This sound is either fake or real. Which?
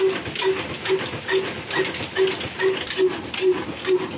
real